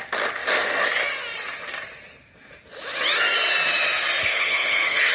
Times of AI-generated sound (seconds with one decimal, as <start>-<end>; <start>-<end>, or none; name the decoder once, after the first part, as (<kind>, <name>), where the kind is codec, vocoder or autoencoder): 4.2-5.1 (codec, HILCodec)